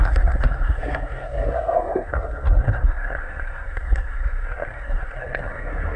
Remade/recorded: remade